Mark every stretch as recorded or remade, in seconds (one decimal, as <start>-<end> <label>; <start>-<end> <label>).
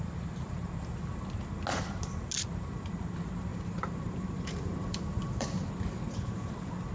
0.0-3.5 recorded; 3.5-5.7 remade; 5.7-6.9 recorded